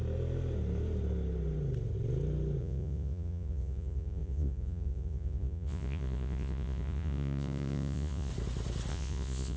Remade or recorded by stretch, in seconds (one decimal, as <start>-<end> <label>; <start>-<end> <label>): 0.0-2.6 recorded; 2.6-8.3 remade; 8.3-8.9 recorded; 8.9-9.6 remade